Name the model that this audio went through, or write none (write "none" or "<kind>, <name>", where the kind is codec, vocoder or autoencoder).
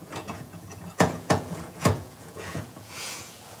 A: vocoder, Vocos